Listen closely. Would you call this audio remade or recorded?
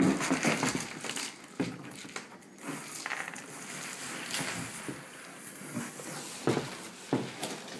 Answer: recorded